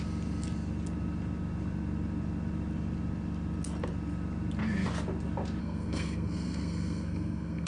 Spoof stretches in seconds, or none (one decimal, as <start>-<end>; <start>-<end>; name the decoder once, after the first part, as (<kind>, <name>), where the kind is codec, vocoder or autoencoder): 5.6-7.7 (codec, SNAC)